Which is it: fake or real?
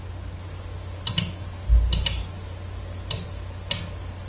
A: real